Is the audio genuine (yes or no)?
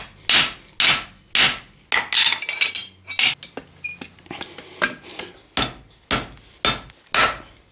yes